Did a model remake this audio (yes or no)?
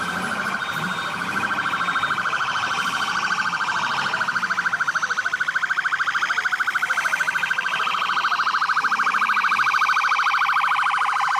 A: yes